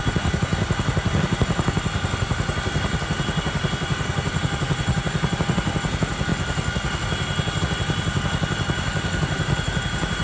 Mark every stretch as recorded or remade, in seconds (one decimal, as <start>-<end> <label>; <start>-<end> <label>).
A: 0.0-10.2 recorded